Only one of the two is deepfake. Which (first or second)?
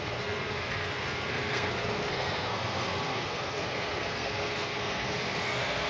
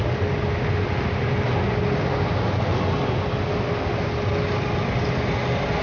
first